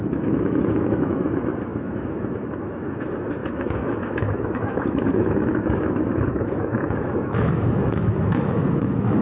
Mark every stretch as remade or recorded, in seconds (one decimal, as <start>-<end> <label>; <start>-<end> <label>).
0.0-9.2 remade